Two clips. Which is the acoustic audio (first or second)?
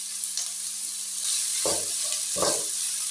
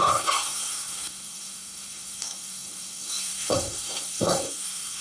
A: first